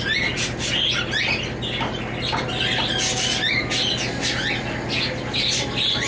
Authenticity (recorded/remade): recorded